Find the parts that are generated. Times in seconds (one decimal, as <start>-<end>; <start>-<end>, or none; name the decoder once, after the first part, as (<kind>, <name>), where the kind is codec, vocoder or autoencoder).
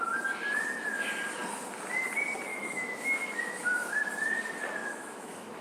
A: 2.5-4.0 (autoencoder, DAC-VAE); 4.8-5.6